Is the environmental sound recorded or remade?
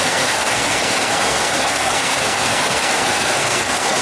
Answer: remade